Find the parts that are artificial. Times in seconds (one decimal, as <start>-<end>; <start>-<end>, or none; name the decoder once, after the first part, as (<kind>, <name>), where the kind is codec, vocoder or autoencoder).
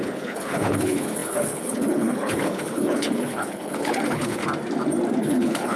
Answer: 0.0-4.4 (codec, HILCodec); 5.2-5.8